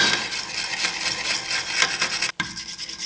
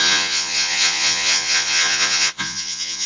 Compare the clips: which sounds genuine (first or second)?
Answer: first